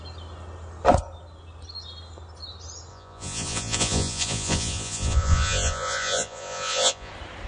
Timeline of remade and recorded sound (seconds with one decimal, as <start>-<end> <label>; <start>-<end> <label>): 0.0-2.9 recorded; 2.9-7.1 remade; 7.1-7.5 recorded